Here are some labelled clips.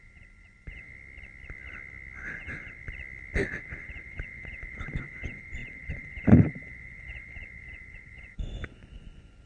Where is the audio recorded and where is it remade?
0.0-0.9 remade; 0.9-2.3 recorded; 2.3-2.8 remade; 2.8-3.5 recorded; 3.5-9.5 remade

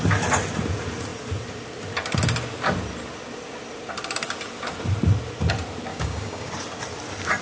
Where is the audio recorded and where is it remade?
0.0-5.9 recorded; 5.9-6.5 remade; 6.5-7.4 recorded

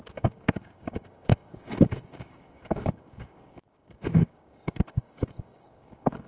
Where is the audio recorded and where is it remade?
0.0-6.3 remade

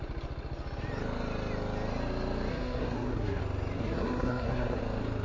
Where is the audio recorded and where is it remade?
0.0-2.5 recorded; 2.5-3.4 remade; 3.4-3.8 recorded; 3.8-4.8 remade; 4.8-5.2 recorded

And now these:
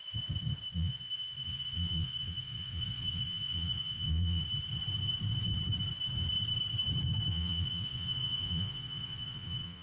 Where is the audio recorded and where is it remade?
0.0-0.7 recorded; 0.7-4.4 remade; 4.4-7.3 recorded; 7.3-9.8 remade